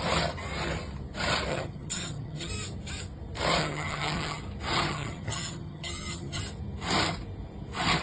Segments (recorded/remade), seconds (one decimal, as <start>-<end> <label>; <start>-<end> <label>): 0.0-1.5 recorded; 1.5-2.5 remade; 2.5-3.6 recorded; 3.6-4.4 remade; 4.4-4.9 recorded; 4.9-6.4 remade; 6.4-8.0 recorded